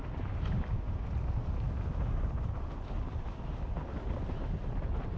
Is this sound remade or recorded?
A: recorded